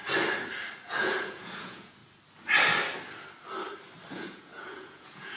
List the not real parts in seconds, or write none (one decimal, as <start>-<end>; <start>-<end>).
0.8-2.0; 4.1-5.4